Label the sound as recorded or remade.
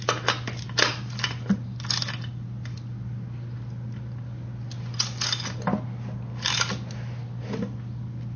recorded